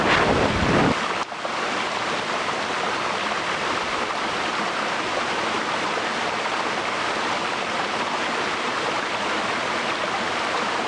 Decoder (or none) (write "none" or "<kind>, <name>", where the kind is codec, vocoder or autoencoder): none